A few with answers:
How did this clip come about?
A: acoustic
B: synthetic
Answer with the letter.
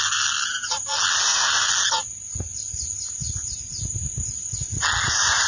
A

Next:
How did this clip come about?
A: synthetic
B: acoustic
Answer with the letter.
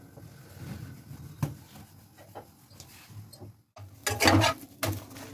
B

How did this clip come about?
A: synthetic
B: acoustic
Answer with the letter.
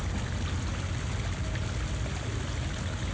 B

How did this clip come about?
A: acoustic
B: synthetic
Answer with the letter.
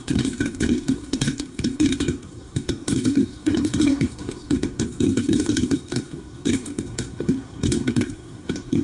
B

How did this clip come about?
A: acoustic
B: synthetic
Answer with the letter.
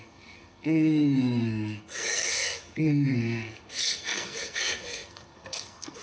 B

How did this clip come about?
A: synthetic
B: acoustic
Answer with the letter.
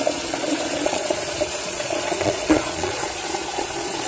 A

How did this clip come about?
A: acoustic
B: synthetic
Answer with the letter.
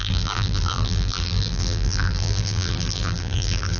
B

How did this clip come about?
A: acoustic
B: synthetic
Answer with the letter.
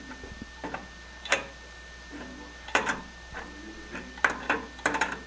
B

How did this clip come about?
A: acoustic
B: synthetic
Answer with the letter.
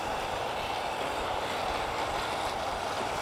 A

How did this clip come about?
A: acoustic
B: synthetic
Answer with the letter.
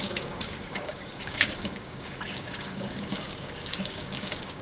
B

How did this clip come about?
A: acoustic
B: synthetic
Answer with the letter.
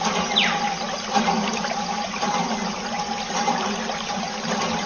A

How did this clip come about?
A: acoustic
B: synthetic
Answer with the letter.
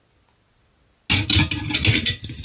A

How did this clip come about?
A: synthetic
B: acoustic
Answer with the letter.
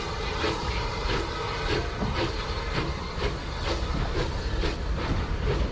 B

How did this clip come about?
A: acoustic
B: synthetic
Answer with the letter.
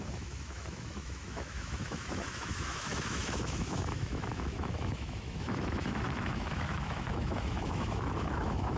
B